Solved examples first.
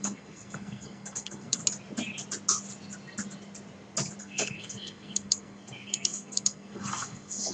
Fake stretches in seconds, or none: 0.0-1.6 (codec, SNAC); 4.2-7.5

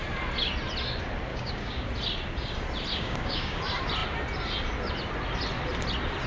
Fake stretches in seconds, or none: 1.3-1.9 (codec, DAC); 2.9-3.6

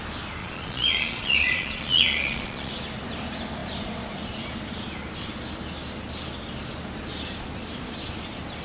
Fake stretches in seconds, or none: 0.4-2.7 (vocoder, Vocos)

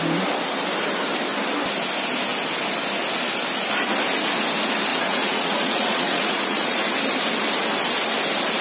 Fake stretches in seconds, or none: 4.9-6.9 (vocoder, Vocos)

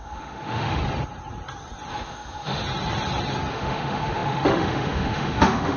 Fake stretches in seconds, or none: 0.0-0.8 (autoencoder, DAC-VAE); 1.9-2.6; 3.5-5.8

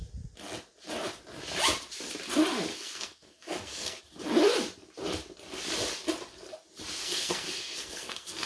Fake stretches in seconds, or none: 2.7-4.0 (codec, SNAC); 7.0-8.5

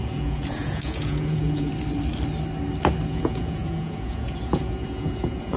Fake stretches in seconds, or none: 0.0-1.7 (vocoder, Vocos); 3.1-5.6

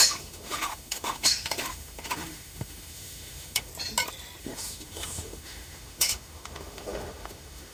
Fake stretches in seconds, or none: 0.0-3.7 (autoencoder, DAC-VAE); 4.4-7.7